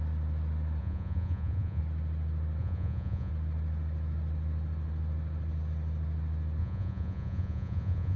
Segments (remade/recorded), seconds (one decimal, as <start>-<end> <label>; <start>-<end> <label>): 0.0-0.8 recorded; 0.8-1.8 remade; 1.8-2.6 recorded; 2.6-3.3 remade; 3.3-6.6 recorded; 6.6-8.2 remade